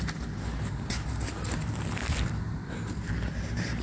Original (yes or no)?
yes